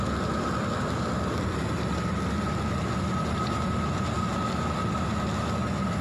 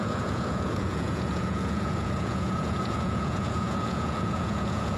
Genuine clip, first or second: first